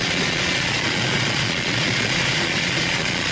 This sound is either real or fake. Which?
fake